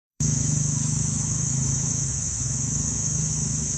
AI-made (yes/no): yes